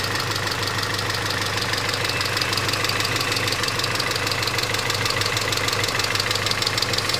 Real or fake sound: real